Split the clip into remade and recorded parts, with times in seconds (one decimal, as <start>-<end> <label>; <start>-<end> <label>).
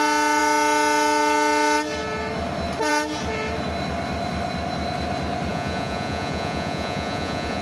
0.0-5.5 recorded; 5.5-7.6 remade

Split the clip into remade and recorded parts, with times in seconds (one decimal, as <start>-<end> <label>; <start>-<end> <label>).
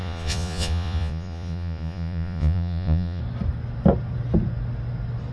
0.0-3.2 remade; 3.2-5.3 recorded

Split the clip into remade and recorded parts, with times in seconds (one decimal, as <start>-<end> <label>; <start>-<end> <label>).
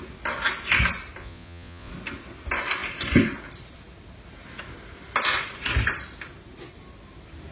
0.0-1.2 recorded; 1.2-1.9 remade; 1.9-7.5 recorded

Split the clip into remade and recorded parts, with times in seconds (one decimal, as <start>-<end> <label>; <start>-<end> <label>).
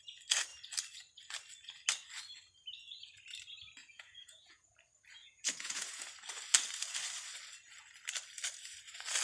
0.0-3.8 recorded; 3.8-4.7 remade; 4.7-5.2 recorded; 5.2-6.0 remade; 6.0-9.2 recorded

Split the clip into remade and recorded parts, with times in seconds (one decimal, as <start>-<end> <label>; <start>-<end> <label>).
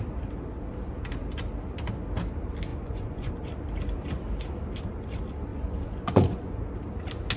0.0-2.7 recorded; 2.7-3.3 remade; 3.3-5.5 recorded; 5.5-6.7 remade; 6.7-7.4 recorded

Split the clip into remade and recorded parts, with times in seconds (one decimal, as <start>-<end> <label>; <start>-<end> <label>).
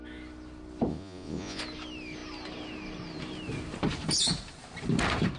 0.0-0.9 recorded; 0.9-1.6 remade; 1.6-5.4 recorded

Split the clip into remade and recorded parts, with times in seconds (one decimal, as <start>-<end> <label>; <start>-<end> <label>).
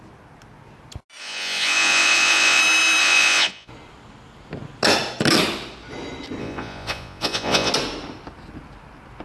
0.0-1.2 recorded; 1.2-2.6 remade; 2.6-3.0 recorded; 3.0-3.7 remade; 3.7-6.4 recorded; 6.4-7.7 remade; 7.7-9.2 recorded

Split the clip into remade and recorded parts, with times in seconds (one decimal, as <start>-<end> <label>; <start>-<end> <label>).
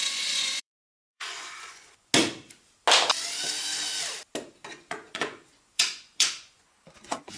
0.0-2.1 remade; 2.1-4.7 recorded; 4.7-7.4 remade